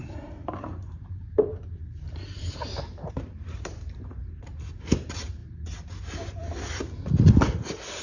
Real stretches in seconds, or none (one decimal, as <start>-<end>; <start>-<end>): 5.4-8.0